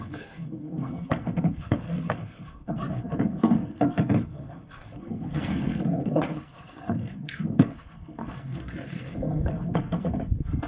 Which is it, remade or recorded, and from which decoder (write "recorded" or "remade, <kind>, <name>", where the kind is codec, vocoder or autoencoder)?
remade, codec, SNAC